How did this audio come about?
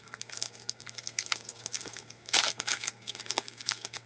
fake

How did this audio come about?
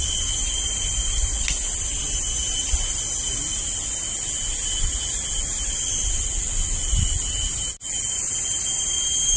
real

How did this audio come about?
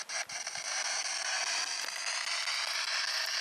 real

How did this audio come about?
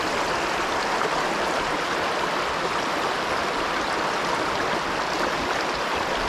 real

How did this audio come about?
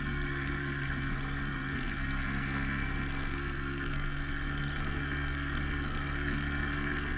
fake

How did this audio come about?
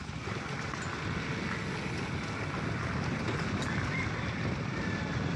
real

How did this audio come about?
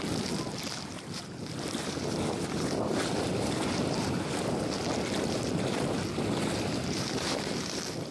real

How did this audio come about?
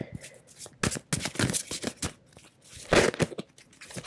real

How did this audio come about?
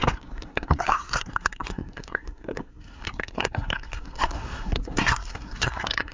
fake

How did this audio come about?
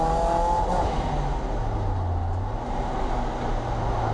real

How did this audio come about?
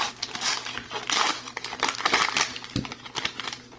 real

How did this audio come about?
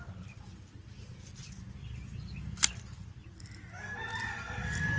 real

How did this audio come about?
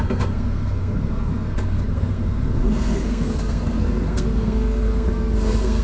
fake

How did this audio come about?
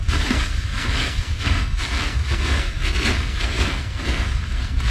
fake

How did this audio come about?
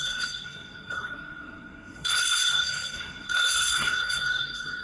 fake